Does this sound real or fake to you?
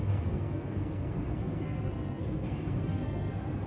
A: fake